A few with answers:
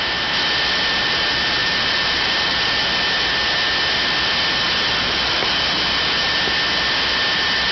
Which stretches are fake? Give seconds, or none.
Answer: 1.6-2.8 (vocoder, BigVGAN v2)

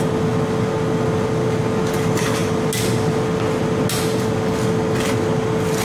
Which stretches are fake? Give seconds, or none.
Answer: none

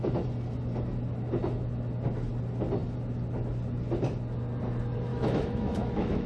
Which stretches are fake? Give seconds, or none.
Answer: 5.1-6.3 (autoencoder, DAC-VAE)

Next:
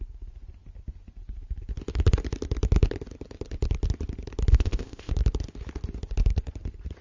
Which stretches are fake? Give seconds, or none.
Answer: 4.5-5.1 (codec, ZipCodec)